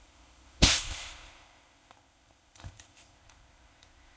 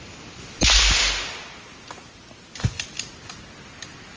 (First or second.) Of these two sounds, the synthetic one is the first